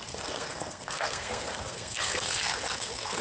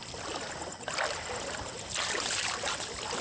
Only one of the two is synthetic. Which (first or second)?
first